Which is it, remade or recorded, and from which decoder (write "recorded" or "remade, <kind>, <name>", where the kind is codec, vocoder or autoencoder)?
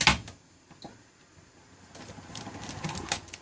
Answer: recorded